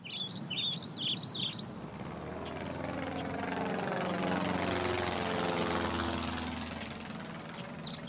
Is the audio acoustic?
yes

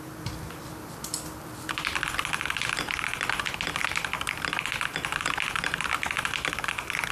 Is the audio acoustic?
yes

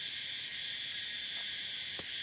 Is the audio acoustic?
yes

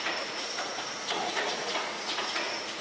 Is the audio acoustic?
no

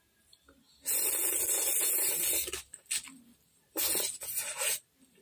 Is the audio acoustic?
yes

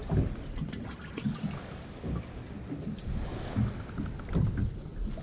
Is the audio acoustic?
yes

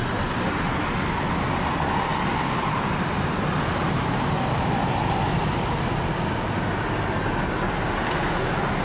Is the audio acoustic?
yes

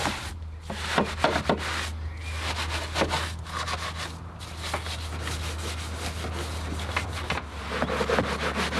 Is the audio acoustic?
yes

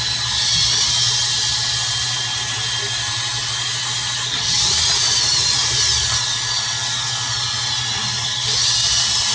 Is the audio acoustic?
yes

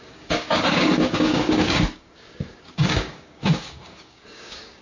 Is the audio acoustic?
no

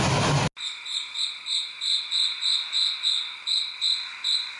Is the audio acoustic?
yes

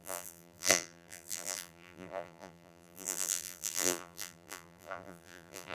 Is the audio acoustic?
no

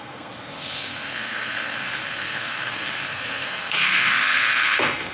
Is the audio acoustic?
no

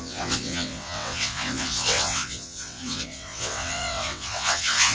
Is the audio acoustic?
no